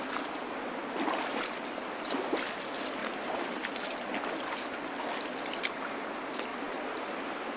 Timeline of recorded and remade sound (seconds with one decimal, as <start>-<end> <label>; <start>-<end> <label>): 0.0-3.0 recorded; 3.0-4.1 remade; 4.1-6.5 recorded; 6.5-7.6 remade